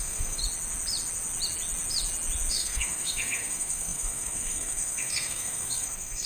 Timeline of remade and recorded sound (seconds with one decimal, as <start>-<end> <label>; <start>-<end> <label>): 0.0-0.4 remade; 0.4-2.5 recorded; 2.5-6.3 remade